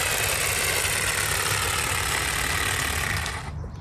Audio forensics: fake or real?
real